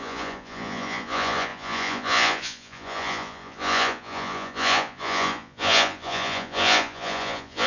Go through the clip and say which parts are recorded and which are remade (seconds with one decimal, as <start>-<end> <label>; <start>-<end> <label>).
0.0-7.7 remade